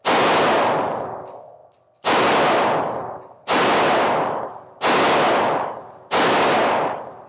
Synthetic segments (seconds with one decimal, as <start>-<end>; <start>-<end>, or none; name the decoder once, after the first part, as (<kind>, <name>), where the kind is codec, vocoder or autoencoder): none